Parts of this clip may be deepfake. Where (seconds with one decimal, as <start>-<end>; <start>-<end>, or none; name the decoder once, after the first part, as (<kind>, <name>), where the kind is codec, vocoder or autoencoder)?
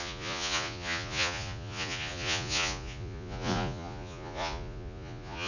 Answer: 0.0-5.5 (vocoder, Vocos)